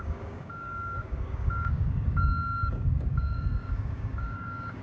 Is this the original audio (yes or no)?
no